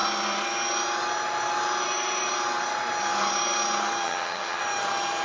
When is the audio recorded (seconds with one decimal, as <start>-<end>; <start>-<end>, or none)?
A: 0.0-4.0; 4.6-5.2